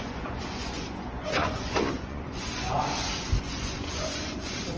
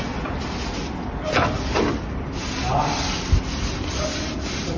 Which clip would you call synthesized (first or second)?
first